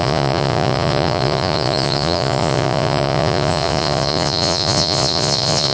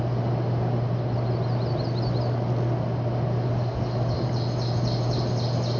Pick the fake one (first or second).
first